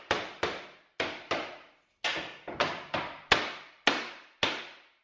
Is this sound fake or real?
real